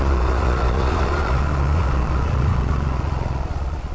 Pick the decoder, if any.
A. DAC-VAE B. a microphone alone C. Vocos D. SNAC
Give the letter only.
C